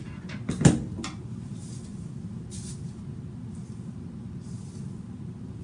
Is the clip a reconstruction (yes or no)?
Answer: no